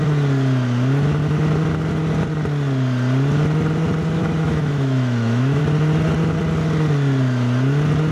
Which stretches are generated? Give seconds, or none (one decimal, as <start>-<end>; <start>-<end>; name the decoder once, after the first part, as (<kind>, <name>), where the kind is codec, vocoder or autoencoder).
4.2-5.6 (autoencoder, DAC-VAE)